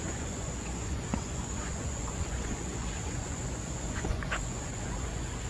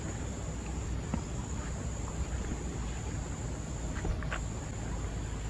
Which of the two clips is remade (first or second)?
first